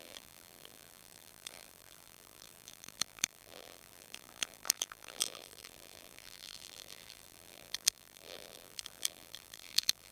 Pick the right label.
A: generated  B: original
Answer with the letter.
A